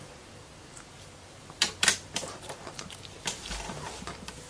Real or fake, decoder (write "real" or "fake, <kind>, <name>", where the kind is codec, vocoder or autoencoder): fake, vocoder, BigVGAN v2